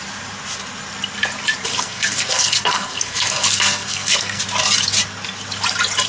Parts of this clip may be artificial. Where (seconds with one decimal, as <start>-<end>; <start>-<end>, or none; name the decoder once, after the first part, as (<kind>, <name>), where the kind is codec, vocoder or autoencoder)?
1.7-4.4 (codec, SNAC)